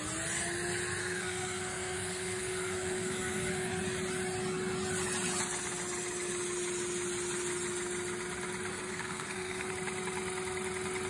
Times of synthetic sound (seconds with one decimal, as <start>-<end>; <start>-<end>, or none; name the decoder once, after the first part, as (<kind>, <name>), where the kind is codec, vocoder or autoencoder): 1.0-3.8 (codec, SNAC); 8.7-9.7